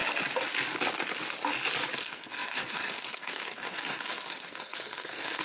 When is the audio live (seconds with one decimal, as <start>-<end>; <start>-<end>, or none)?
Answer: 0.0-2.0